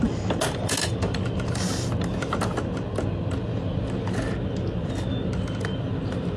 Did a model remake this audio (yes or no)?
no